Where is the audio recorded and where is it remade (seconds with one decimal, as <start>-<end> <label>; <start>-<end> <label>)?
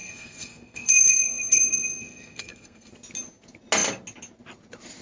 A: 0.0-2.9 remade; 2.9-5.0 recorded